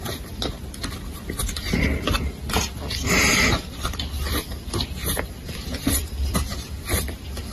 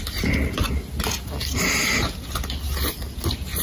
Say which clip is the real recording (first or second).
second